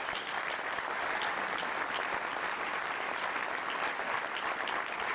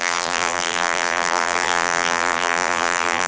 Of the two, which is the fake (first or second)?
second